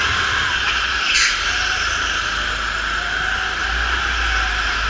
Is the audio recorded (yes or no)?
yes